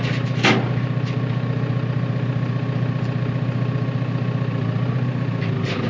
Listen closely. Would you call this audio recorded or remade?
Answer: recorded